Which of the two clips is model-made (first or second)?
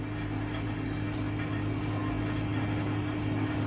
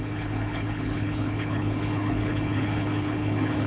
second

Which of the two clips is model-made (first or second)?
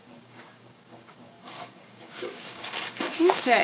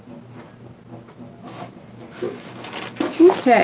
first